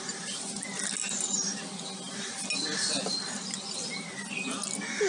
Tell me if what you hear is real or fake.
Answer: real